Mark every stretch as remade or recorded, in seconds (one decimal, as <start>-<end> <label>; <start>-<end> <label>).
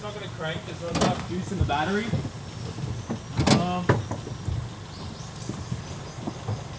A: 0.0-6.8 recorded